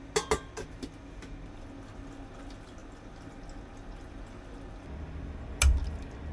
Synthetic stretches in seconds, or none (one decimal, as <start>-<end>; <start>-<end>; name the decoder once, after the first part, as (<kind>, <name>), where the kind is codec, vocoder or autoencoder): none